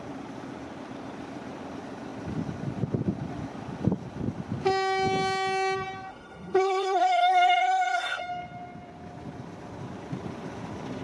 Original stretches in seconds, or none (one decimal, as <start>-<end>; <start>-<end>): 0.0-6.1; 8.2-11.0